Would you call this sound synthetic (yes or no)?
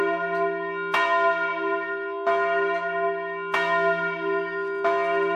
no